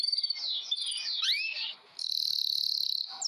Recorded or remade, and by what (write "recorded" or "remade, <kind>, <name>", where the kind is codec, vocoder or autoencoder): recorded